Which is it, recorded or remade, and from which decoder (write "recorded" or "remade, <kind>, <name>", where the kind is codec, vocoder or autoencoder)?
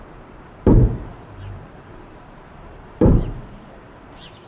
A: remade, vocoder, BigVGAN v2